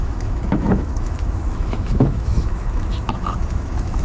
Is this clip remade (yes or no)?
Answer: yes